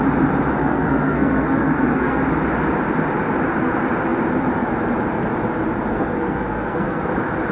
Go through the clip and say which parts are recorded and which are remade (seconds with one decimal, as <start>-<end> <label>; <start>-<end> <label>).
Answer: 0.0-0.6 recorded; 0.6-2.2 remade; 2.2-5.9 recorded; 5.9-7.1 remade; 7.1-7.5 recorded